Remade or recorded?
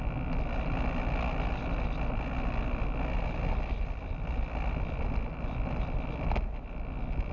recorded